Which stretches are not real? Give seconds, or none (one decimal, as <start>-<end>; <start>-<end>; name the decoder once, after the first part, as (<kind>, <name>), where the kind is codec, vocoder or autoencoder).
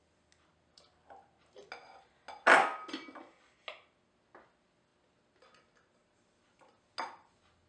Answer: none